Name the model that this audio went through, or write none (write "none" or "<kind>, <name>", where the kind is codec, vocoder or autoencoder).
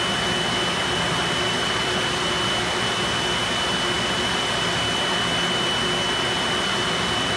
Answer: none